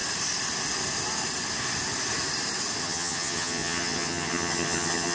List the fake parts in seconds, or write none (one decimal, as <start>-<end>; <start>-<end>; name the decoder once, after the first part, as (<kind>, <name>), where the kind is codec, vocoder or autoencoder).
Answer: 2.8-5.1 (vocoder, HiFi-GAN)